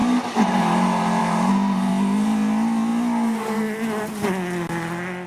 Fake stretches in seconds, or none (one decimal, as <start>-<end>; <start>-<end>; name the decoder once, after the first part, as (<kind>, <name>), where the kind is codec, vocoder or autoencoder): 0.0-0.6 (vocoder, BigVGAN v2); 1.2-1.9

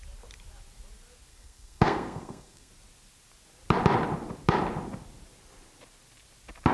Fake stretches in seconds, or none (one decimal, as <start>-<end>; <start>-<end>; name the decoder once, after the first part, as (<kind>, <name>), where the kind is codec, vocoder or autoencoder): 1.3-2.7 (codec, SNAC)

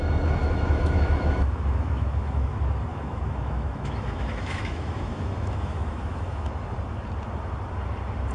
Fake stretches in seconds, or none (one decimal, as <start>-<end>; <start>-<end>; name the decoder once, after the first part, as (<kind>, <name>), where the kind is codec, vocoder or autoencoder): 0.4-2.5 (autoencoder, DAC-VAE); 2.9-6.5

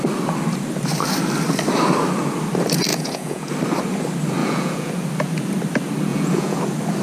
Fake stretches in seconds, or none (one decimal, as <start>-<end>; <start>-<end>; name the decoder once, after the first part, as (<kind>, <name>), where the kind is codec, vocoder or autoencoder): 2.9-3.5 (vocoder, Vocos); 4.4-4.9; 6.1-6.6

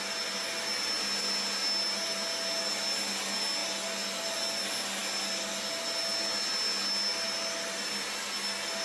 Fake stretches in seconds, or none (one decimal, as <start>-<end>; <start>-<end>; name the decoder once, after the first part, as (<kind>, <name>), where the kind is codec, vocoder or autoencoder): none

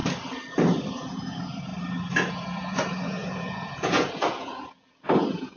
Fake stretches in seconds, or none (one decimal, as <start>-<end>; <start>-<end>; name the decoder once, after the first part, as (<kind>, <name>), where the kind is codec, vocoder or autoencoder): 0.9-1.7 (vocoder, Vocos); 2.3-5.6

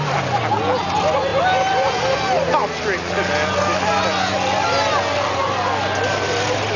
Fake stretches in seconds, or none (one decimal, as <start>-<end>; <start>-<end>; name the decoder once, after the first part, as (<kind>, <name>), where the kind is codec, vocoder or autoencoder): none

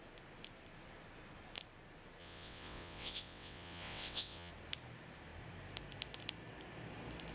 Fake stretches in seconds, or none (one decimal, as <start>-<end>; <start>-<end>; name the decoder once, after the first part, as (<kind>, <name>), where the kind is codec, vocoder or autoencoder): 2.2-4.5 (vocoder, WaveNeXt)